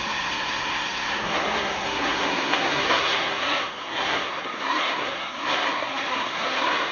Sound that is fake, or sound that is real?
fake